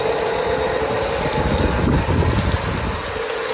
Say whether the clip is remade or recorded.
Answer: recorded